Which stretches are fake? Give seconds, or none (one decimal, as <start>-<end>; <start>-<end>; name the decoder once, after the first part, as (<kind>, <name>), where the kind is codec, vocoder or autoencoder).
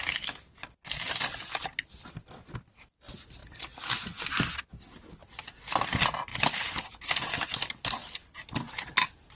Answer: 6.3-6.8 (vocoder, BigVGAN v2)